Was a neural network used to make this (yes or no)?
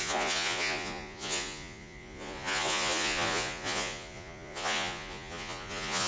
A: yes